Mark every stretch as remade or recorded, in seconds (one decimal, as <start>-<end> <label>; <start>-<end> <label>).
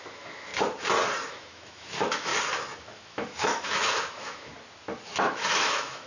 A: 0.0-0.5 remade; 0.5-1.3 recorded; 1.3-2.3 remade; 2.3-2.8 recorded; 2.8-4.5 remade; 4.5-5.3 recorded; 5.3-6.1 remade